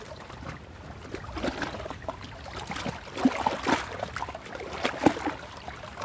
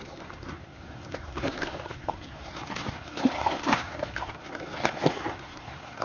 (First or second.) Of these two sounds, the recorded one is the first